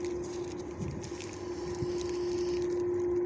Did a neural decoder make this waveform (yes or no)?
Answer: no